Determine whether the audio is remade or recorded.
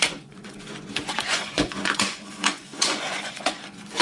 remade